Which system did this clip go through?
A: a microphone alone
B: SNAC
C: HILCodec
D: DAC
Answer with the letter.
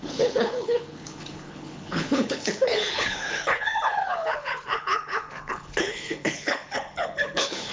C